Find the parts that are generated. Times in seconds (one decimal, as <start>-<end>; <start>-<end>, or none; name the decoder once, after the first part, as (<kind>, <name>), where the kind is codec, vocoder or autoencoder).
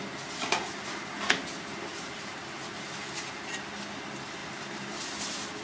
1.9-2.4 (vocoder, BigVGAN v2); 4.4-5.0